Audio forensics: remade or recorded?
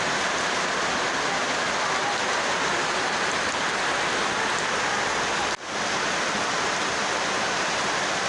recorded